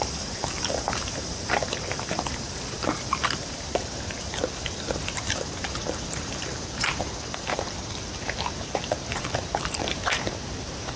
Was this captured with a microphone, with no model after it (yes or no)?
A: no